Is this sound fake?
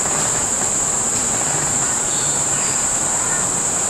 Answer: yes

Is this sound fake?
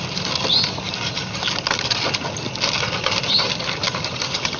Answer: no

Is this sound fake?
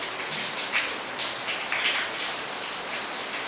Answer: no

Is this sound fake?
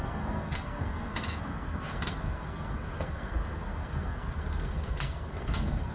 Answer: yes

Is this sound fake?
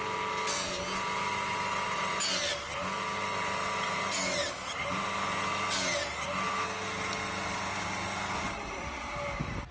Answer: no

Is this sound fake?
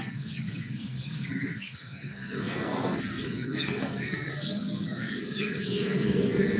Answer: yes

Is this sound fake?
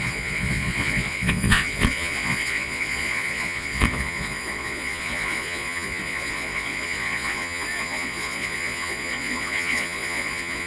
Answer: yes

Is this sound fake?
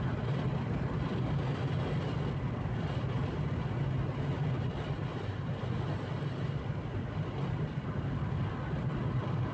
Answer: no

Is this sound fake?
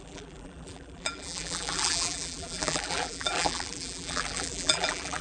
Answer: yes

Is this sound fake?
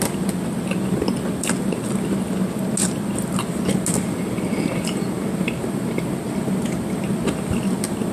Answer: no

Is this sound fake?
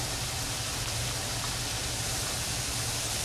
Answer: no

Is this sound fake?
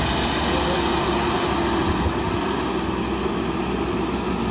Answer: no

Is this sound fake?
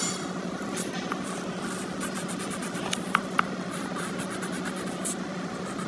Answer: no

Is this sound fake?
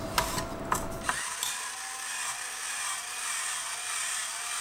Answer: no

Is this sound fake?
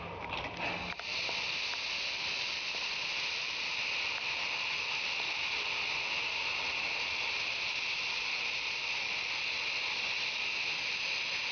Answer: no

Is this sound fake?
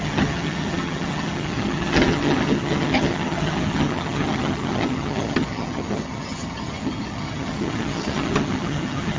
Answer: yes